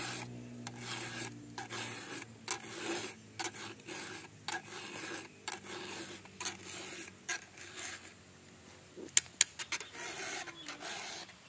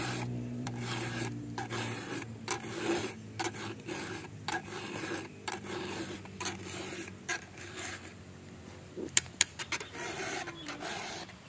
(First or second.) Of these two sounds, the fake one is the second